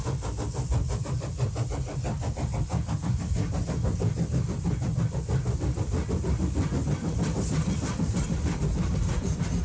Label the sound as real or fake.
real